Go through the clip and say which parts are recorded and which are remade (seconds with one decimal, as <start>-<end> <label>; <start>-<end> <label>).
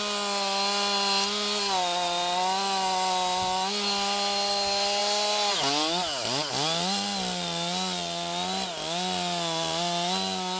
0.0-10.6 recorded